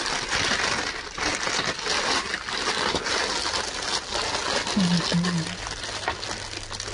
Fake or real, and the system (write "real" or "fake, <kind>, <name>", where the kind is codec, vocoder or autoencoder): real